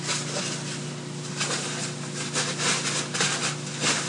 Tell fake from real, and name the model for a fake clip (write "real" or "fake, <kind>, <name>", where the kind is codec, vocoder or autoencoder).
real